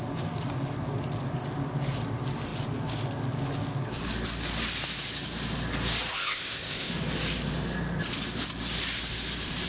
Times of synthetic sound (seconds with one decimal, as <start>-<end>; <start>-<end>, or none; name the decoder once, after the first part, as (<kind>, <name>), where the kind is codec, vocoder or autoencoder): 6.1-6.9 (codec, ZipCodec)